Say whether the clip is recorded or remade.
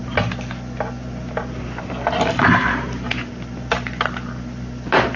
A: recorded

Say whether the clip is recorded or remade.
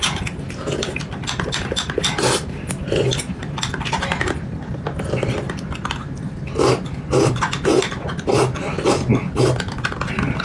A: recorded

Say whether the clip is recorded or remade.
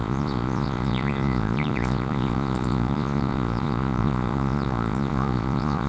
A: remade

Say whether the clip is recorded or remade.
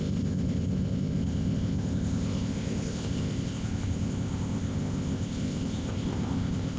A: remade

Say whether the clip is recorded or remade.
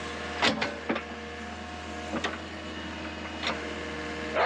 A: recorded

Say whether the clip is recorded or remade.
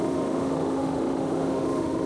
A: remade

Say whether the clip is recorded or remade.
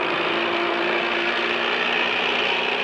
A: recorded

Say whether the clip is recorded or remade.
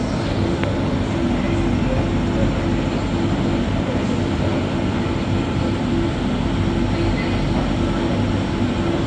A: recorded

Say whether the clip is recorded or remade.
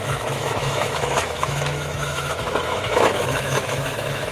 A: remade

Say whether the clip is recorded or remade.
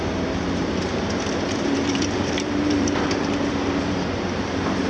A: remade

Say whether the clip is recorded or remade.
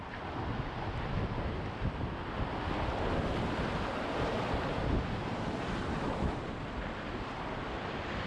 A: recorded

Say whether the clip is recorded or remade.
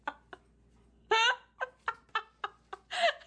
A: recorded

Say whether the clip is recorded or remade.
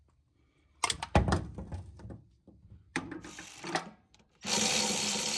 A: remade